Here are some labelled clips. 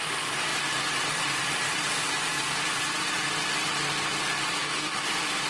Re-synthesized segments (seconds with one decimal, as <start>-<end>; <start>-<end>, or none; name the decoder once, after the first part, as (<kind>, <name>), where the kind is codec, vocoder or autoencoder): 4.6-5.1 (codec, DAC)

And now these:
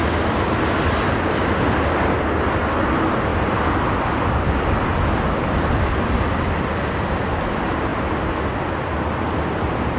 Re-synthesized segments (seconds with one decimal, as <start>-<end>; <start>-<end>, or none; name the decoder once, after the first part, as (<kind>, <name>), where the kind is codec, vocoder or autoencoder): none

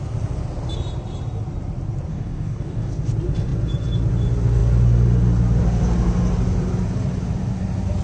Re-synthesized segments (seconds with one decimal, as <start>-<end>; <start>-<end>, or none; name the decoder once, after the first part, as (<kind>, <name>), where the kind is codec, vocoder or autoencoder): 2.1-2.9 (codec, DAC)

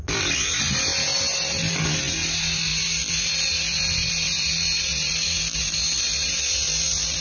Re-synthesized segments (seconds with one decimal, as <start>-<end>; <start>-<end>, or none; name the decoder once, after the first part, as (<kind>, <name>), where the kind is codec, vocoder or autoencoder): none

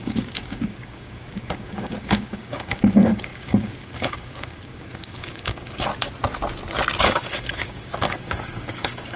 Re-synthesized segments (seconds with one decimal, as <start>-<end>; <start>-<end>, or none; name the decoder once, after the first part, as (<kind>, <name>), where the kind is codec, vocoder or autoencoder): 0.0-5.9 (codec, DAC); 7.0-9.2

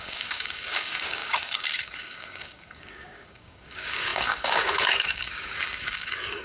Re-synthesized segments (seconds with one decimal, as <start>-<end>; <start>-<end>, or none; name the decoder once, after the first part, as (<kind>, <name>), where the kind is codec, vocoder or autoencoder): 0.0-6.4 (codec, DAC)

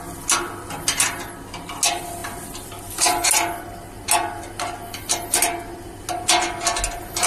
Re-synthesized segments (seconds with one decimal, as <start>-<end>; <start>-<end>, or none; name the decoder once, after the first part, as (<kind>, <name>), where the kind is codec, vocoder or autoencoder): none

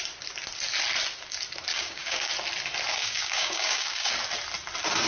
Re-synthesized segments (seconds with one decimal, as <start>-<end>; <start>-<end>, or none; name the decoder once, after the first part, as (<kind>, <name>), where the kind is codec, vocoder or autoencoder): 1.7-2.3 (codec, DAC); 2.9-4.1